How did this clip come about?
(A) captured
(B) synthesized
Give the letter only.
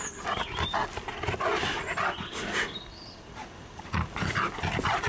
A